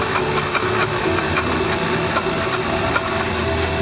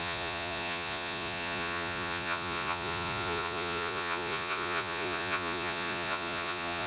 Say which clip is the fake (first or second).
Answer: second